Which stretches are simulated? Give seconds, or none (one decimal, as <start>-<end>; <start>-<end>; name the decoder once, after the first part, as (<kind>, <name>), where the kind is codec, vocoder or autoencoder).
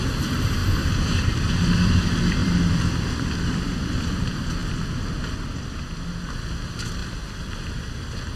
0.0-0.6 (vocoder, BigVGAN v2); 1.2-4.6; 5.2-8.4